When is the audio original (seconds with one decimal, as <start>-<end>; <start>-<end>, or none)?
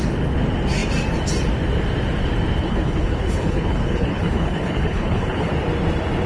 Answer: 0.0-2.6; 5.5-6.3